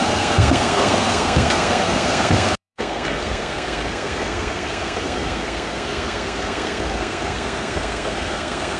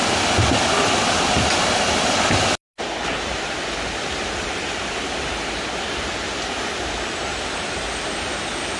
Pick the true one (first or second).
second